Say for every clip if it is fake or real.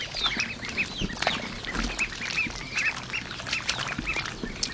real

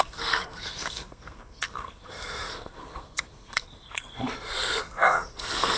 fake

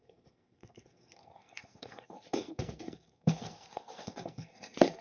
fake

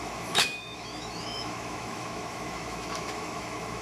fake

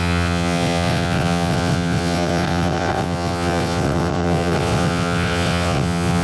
fake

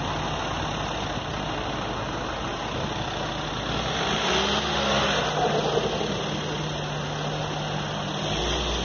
real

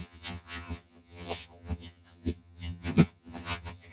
fake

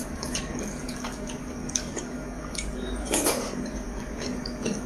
fake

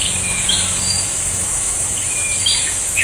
fake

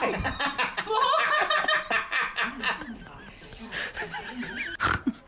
fake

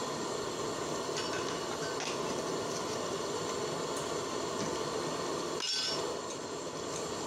real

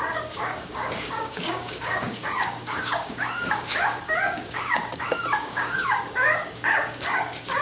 fake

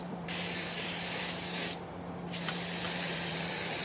fake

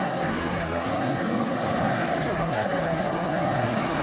fake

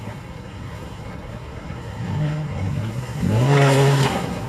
fake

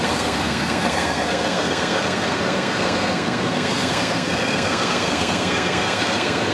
fake